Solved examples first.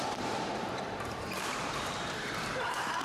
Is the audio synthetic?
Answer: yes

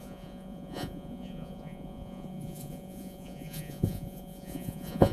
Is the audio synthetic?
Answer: yes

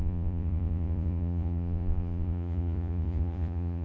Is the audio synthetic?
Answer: yes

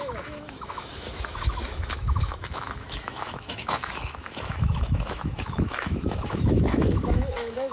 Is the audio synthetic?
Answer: yes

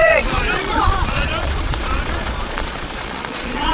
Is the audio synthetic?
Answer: yes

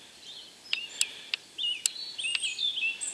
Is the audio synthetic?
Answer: no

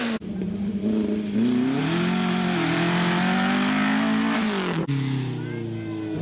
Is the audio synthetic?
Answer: no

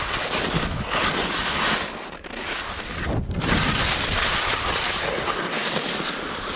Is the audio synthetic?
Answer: no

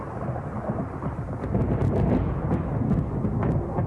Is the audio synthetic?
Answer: no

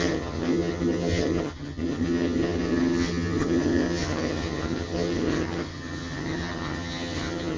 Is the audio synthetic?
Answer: yes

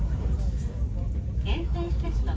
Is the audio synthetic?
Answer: yes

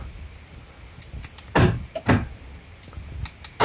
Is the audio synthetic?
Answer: no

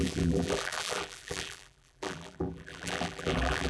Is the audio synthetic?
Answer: yes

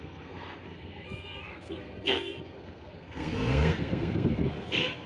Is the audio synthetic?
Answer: yes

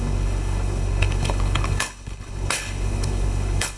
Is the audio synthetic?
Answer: yes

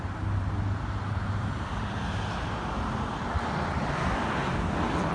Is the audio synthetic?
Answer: no